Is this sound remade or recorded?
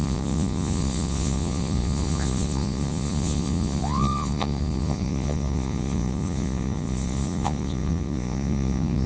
remade